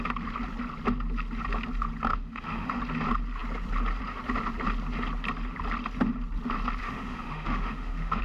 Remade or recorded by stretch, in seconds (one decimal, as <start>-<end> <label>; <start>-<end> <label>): 0.0-2.1 recorded; 2.1-2.8 remade; 2.8-6.8 recorded; 6.8-8.2 remade